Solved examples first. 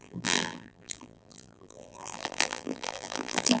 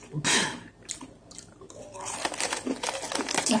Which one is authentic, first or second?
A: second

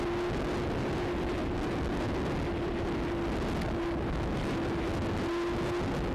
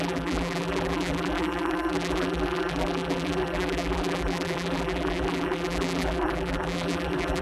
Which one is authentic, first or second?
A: first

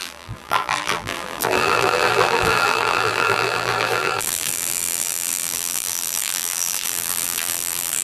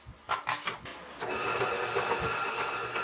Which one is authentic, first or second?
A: second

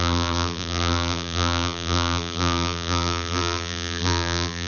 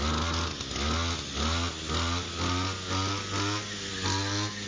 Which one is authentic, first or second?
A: second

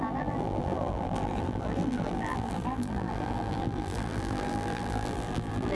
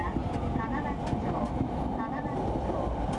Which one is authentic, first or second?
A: second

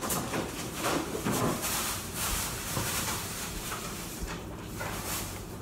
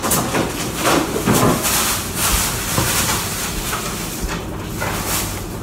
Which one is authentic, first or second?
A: second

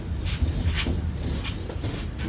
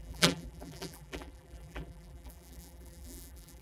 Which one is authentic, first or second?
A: first